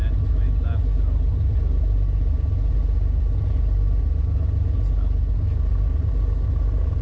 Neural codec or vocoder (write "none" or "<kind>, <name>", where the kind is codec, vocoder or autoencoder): none